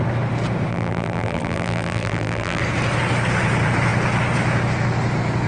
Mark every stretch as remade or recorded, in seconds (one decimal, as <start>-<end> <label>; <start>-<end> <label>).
0.0-0.7 recorded; 0.7-2.6 remade; 2.6-5.5 recorded